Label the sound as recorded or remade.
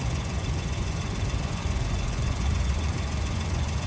remade